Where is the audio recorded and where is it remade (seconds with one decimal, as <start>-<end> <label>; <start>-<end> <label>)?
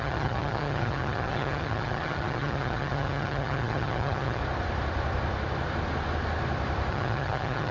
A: 0.0-4.4 remade; 4.4-6.9 recorded; 6.9-7.7 remade